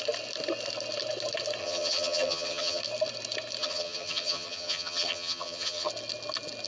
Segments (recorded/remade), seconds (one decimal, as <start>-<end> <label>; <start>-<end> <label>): 0.0-1.6 recorded; 1.6-2.8 remade; 2.8-3.6 recorded; 3.6-5.9 remade; 5.9-6.7 recorded